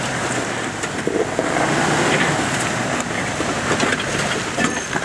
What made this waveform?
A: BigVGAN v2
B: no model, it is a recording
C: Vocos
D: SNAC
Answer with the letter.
B